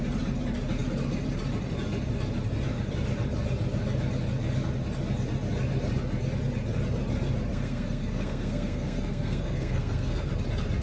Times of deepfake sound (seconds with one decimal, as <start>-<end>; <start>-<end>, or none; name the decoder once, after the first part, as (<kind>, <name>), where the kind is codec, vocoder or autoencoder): 7.5-10.3 (codec, SNAC)